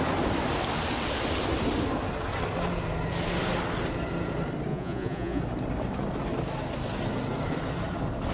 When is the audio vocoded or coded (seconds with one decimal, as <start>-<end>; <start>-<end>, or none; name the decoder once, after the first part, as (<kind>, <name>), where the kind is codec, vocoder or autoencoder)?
4.7-5.4 (vocoder, Vocos)